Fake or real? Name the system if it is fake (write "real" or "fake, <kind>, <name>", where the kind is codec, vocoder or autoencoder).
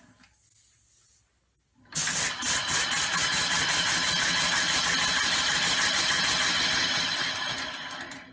real